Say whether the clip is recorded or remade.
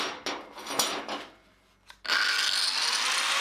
recorded